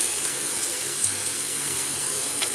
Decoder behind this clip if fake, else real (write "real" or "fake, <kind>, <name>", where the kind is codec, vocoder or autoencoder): fake, codec, SNAC